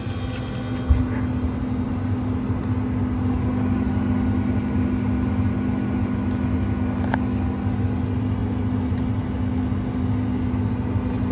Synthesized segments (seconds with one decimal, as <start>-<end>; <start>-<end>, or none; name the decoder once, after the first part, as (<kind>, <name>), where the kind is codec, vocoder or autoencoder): none